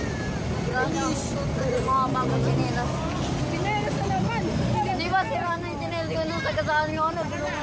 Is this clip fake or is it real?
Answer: real